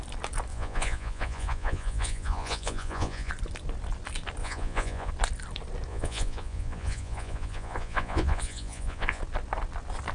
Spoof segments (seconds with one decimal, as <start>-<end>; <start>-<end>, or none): 0.5-3.3; 4.4-5.1; 5.9-9.2